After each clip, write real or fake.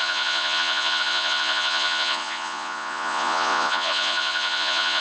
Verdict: fake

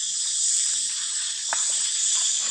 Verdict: fake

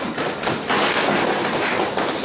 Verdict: real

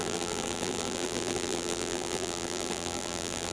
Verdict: fake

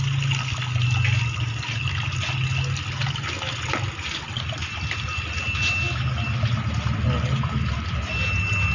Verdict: real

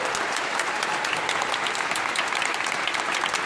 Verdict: real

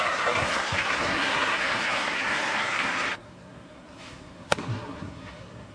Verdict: fake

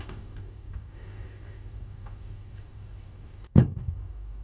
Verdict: fake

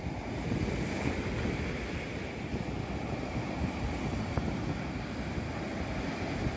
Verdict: real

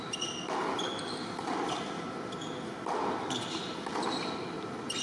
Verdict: real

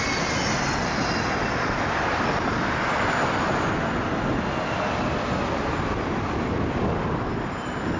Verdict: real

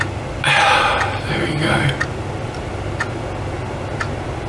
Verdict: real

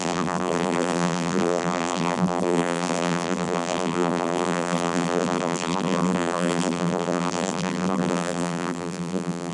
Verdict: fake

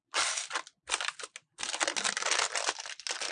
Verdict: real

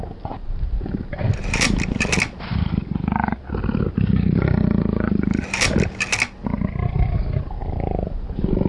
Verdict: real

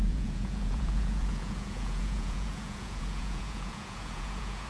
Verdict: fake